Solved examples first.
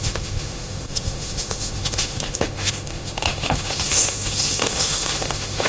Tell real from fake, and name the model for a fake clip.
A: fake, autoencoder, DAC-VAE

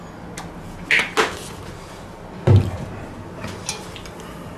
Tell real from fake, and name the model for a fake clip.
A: real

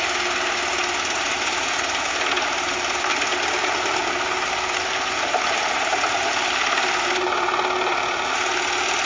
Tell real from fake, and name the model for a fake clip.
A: real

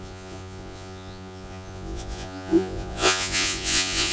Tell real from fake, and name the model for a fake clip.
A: fake, vocoder, Vocos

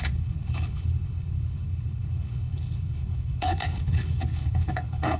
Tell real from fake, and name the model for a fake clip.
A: fake, codec, HILCodec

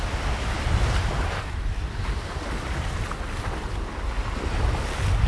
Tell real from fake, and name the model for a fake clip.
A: real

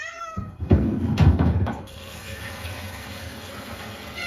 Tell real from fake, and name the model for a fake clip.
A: fake, codec, SNAC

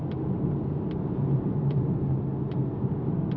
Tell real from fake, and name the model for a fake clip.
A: real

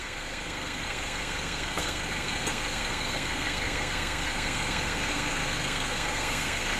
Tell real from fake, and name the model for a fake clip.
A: fake, codec, SNAC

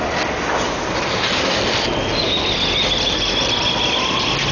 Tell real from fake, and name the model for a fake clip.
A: real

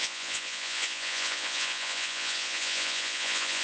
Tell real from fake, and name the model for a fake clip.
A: fake, vocoder, Vocos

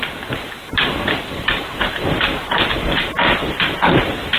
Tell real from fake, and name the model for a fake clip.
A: fake, vocoder, BigVGAN v2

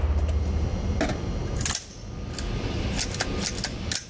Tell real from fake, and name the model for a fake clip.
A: real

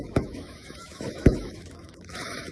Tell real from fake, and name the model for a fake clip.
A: fake, autoencoder, DAC-VAE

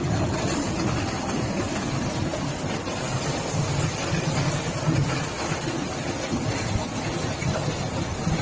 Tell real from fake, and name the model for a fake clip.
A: real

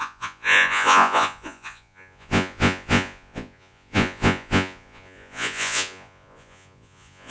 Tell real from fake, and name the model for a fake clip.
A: fake, vocoder, Vocos